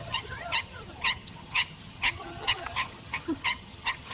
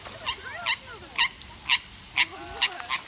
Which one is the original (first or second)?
second